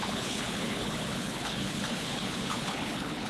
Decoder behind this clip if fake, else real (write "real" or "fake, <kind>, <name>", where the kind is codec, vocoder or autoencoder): fake, codec, HILCodec